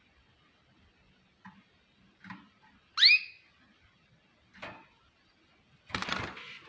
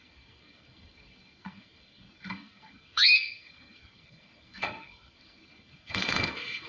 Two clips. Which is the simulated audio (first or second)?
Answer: second